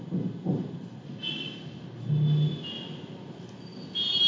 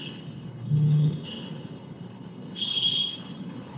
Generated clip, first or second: second